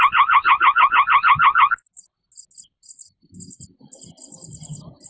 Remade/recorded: recorded